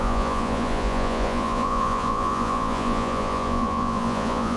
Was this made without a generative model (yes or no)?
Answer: no